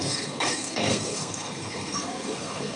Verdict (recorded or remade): remade